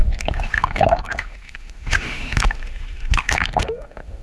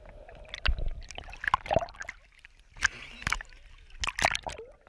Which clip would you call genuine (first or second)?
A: second